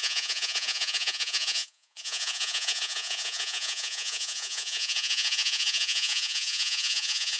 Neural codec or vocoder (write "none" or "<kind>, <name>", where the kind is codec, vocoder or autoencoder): vocoder, Vocos